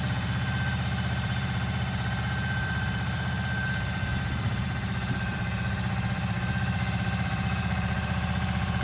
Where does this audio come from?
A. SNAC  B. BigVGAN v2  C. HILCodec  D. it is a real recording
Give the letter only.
B